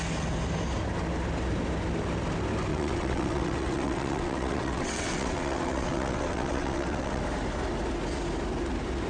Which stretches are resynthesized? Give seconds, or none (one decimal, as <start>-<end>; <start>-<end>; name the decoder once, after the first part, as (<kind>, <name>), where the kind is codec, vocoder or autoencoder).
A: 2.7-7.2 (vocoder, WaveNeXt)